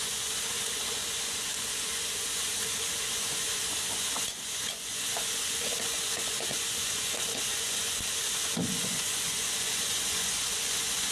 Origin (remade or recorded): remade